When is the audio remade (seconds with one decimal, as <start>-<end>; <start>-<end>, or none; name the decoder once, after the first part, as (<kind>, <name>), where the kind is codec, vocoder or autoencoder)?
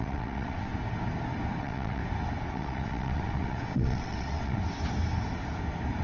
0.0-0.7 (vocoder, WaveNeXt); 1.6-2.0; 2.5-4.6